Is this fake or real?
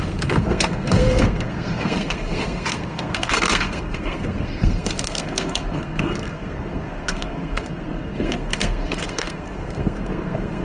fake